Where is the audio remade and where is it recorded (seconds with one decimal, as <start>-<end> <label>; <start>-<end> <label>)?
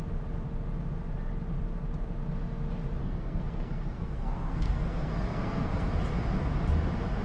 0.0-3.0 recorded; 3.0-5.9 remade; 5.9-7.2 recorded